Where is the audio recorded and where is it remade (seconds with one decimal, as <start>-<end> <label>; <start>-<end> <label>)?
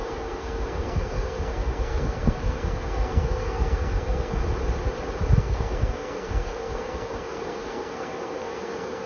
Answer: 0.0-4.4 remade; 4.4-5.4 recorded; 5.4-9.1 remade